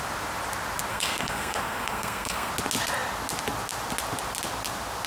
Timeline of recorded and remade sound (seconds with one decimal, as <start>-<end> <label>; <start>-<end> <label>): 0.0-0.9 recorded; 0.9-2.5 remade; 2.5-5.1 recorded